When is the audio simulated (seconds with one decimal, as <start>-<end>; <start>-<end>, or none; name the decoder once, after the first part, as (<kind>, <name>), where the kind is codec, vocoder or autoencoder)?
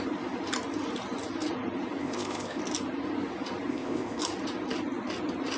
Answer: 2.0-2.6 (codec, ZipCodec); 3.7-4.2